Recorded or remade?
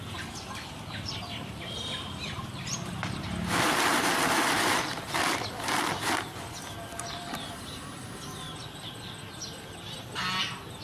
remade